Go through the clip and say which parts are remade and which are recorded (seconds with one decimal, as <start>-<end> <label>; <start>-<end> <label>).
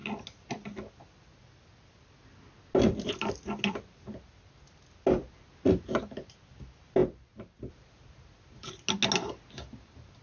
0.0-10.2 recorded